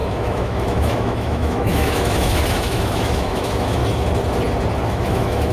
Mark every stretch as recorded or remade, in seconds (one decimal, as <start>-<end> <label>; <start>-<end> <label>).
0.0-3.8 remade; 3.8-4.8 recorded; 4.8-5.5 remade